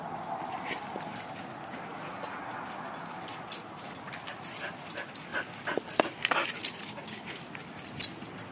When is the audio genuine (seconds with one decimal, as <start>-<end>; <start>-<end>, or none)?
0.0-8.5